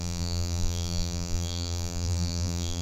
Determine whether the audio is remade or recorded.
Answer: remade